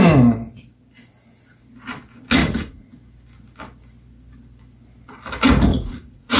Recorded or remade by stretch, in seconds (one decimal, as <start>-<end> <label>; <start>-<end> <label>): 0.0-2.4 recorded; 2.4-2.9 remade; 2.9-5.7 recorded; 5.7-6.4 remade